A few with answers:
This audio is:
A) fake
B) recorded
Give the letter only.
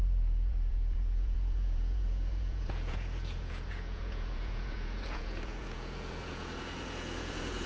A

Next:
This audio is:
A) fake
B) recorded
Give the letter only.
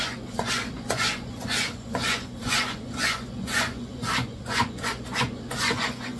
A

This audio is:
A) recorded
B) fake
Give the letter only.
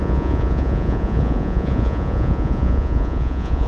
B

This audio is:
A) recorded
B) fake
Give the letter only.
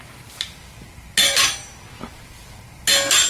A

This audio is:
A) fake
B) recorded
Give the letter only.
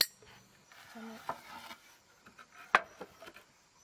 B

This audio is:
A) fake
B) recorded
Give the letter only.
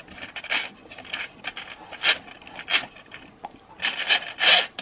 B